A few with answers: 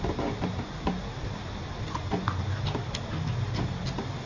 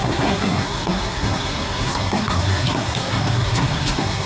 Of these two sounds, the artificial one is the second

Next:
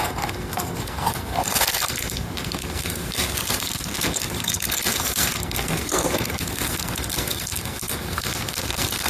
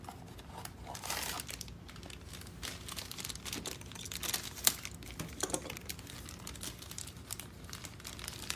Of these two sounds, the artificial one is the first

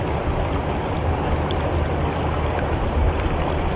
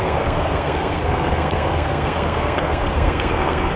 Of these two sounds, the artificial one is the second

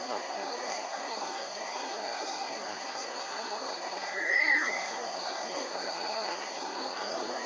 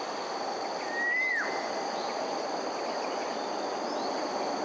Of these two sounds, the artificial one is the first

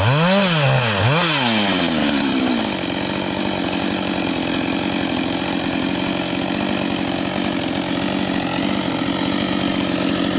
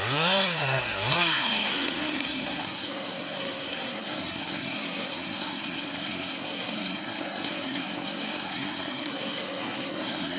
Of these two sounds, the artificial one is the second